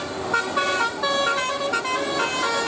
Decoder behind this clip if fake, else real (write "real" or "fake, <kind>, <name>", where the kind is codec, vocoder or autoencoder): real